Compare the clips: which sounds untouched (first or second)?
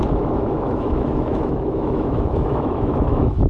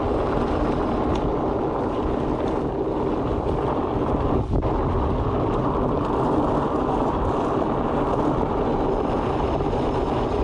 second